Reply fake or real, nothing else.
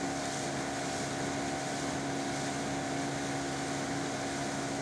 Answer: real